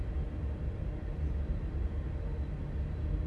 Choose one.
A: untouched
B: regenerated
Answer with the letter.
A